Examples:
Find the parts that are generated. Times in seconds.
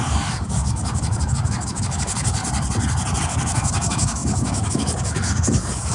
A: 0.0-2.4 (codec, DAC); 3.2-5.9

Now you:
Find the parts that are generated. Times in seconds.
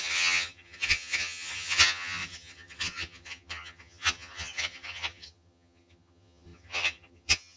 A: 0.0-7.6 (vocoder, HiFi-GAN)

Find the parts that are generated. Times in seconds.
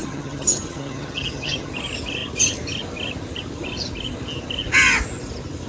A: 0.0-1.7 (vocoder, HiFi-GAN)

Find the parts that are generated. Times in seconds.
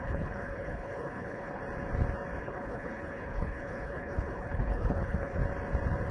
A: 0.0-1.6 (codec, HILCodec); 2.4-5.4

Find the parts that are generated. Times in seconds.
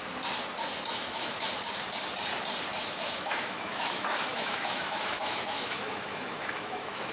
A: 0.9-1.5 (autoencoder, DAC-VAE); 2.7-7.1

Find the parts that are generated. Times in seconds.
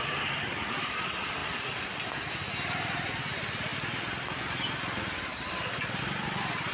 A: 0.0-1.4 (vocoder, BigVGAN v2); 3.2-3.7; 6.0-6.7